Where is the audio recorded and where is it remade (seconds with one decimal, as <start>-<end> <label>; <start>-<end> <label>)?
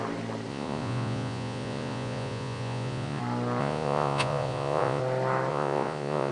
0.0-0.5 recorded; 0.5-3.2 remade; 3.2-3.6 recorded; 3.6-5.0 remade; 5.0-5.5 recorded; 5.5-6.3 remade